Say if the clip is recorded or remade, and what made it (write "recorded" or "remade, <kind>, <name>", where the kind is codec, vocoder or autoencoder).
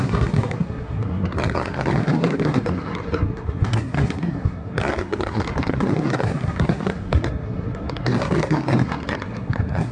remade, codec, SNAC